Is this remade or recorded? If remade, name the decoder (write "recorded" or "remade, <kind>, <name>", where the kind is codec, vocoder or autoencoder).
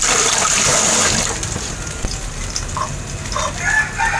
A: recorded